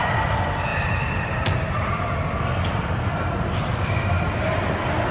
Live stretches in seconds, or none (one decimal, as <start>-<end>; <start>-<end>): 0.0-5.1